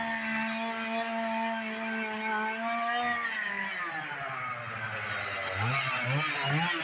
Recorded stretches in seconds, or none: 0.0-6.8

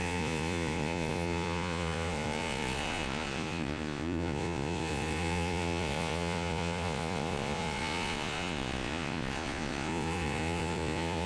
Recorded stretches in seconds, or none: none

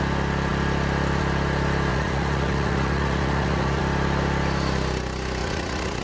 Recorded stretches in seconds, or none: 0.0-1.9; 3.8-5.4

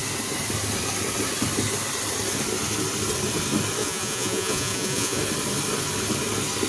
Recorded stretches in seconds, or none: 0.0-3.8; 5.2-6.7

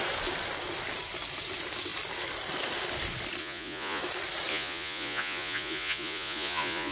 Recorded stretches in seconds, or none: 0.0-3.4; 4.0-4.5